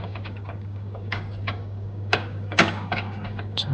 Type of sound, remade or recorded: remade